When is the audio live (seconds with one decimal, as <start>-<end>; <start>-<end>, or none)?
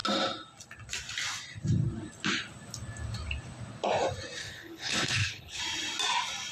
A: 0.0-4.4; 5.6-6.5